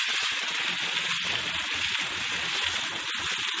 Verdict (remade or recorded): recorded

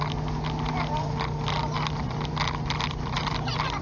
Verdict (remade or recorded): recorded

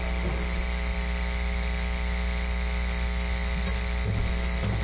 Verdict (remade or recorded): recorded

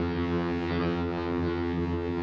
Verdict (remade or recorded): remade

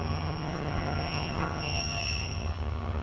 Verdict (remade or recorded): remade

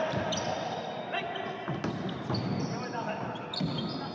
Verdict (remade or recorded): recorded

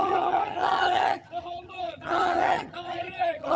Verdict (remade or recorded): remade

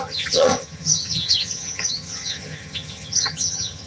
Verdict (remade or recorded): remade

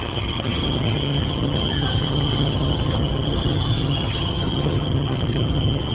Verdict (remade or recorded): remade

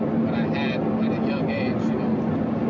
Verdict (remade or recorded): recorded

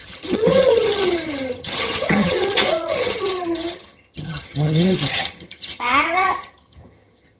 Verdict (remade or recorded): remade